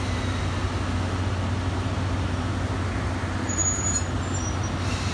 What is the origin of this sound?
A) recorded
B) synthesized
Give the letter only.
A